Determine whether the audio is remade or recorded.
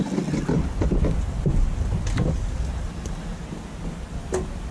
recorded